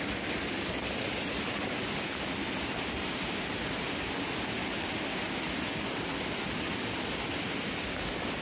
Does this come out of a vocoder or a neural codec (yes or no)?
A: no